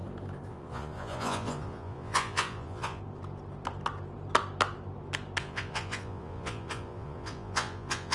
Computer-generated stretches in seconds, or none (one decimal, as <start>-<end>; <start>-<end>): 0.5-3.0; 5.4-8.1